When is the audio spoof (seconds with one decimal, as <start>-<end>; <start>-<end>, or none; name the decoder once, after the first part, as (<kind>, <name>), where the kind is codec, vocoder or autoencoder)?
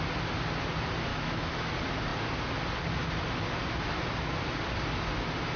1.1-1.7 (autoencoder, DAC-VAE)